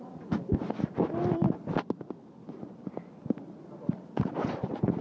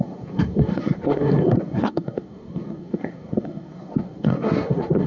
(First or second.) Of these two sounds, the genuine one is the first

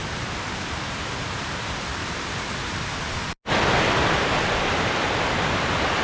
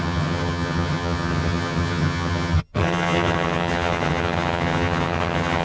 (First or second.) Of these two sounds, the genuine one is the first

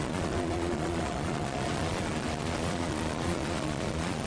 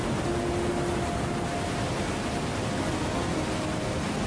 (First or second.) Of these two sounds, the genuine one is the second